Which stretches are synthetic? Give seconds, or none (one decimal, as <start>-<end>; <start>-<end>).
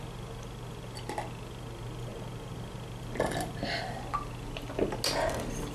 none